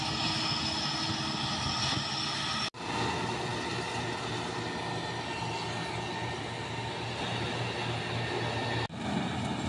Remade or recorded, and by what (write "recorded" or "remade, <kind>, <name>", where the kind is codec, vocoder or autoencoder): recorded